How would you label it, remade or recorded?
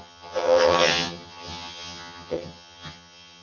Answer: remade